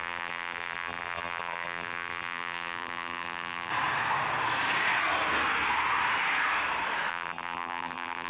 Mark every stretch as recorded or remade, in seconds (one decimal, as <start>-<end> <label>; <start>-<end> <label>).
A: 0.0-3.7 remade; 3.7-7.1 recorded; 7.1-8.3 remade